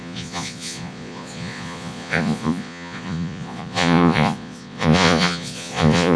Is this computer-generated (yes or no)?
yes